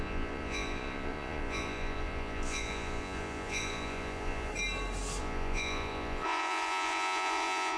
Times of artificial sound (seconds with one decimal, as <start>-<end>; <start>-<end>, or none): 0.0-4.5; 5.2-7.8